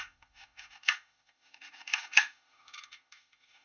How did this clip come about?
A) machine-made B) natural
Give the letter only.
A